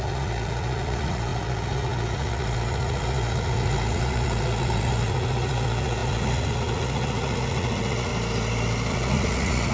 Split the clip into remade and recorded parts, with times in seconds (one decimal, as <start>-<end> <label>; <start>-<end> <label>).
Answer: 0.0-8.1 remade; 8.1-8.9 recorded; 8.9-9.7 remade